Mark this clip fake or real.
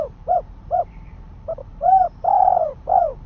fake